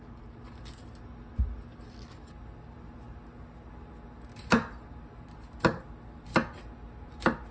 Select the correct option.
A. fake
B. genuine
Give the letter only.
B